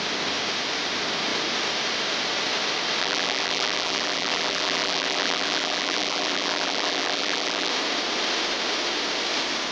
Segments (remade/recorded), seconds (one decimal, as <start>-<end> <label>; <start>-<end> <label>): 0.0-3.0 recorded; 3.0-7.7 remade; 7.7-9.7 recorded